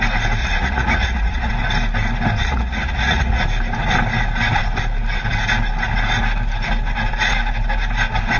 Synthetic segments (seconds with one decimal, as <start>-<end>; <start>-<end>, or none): 0.4-1.5; 2.4-3.4